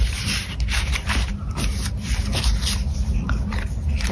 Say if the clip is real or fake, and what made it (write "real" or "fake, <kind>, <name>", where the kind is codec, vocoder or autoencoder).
fake, vocoder, BigVGAN v2